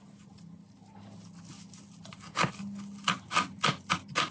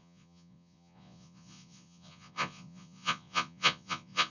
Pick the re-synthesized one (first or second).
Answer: second